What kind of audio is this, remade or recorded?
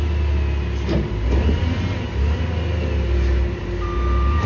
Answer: recorded